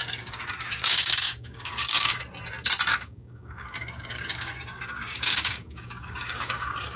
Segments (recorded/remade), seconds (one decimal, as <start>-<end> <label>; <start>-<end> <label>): 0.0-2.2 remade; 2.2-2.9 recorded; 2.9-7.0 remade